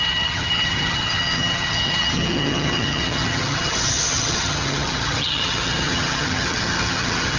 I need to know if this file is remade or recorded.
remade